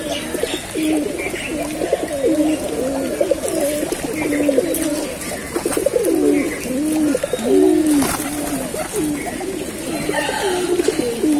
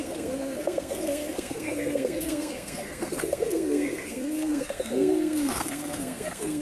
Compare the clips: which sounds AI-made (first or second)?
second